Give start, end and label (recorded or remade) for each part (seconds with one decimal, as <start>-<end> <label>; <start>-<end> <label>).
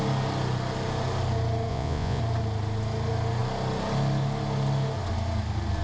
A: 0.0-1.7 recorded; 1.7-2.2 remade; 2.2-5.8 recorded